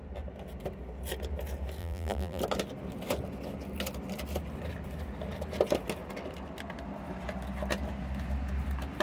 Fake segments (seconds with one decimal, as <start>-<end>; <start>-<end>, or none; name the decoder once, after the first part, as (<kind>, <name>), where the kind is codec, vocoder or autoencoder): 1.8-2.4 (vocoder, BigVGAN v2)